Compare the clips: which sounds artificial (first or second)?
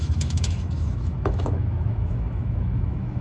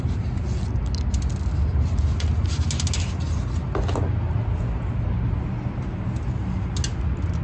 first